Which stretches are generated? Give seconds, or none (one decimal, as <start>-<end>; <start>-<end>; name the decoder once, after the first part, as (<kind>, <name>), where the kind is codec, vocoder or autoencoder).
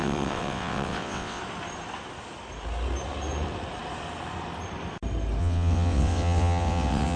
0.0-1.4 (vocoder, WaveNeXt); 5.4-7.2